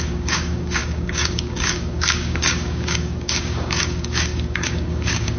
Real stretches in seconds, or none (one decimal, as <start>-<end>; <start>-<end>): none